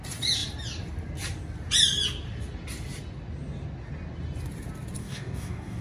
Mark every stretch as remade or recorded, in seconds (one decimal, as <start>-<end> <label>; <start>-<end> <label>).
0.0-5.0 recorded; 5.0-5.8 remade